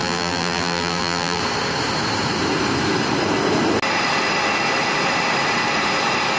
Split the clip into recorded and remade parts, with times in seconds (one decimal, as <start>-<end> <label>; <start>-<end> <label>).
0.0-1.4 remade; 1.4-6.4 recorded

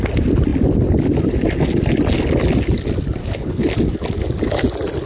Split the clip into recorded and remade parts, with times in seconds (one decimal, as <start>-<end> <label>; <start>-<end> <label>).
0.0-3.2 recorded; 3.2-3.7 remade; 3.7-5.1 recorded

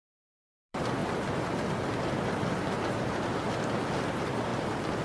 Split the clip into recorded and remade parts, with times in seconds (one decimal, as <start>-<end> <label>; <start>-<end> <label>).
0.0-1.0 remade; 1.0-4.0 recorded; 4.0-4.5 remade; 4.5-5.0 recorded

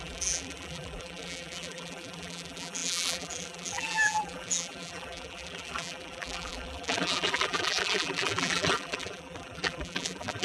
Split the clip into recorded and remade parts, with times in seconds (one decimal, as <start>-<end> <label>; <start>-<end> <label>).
0.0-10.4 remade

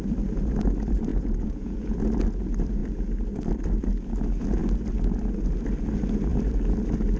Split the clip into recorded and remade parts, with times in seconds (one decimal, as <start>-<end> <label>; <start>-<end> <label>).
0.0-1.1 recorded; 1.1-2.0 remade; 2.0-7.2 recorded

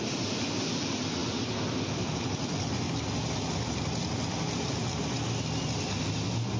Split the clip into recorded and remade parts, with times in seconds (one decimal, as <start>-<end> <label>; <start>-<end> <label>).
0.0-6.6 recorded

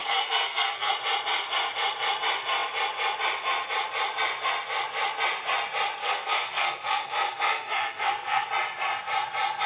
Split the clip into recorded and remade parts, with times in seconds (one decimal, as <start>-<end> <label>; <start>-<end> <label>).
0.0-0.9 remade; 0.9-6.0 recorded; 6.0-8.5 remade; 8.5-9.7 recorded